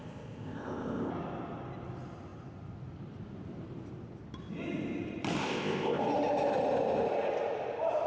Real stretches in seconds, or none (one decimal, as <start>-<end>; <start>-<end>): 1.1-5.4; 6.0-8.1